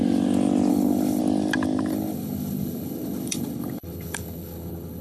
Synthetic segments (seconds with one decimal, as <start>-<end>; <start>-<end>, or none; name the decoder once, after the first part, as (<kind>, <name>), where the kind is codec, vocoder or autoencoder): 0.7-1.2 (codec, HILCodec); 1.9-5.0